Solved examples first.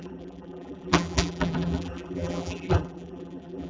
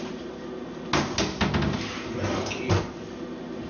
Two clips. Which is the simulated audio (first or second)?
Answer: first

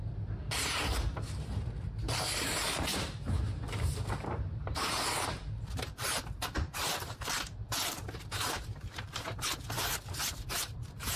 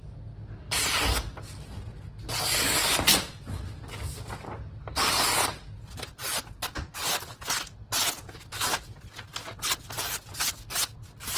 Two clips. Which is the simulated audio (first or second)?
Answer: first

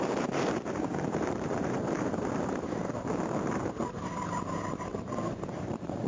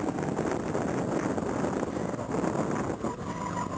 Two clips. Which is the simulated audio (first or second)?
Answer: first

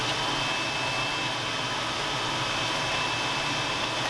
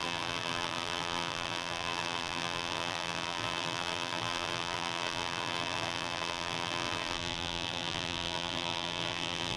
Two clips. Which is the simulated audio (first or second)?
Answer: second